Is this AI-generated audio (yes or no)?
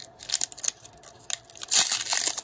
no